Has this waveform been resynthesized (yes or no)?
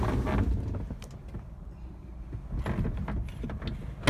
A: no